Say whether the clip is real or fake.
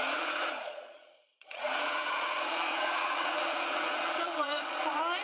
fake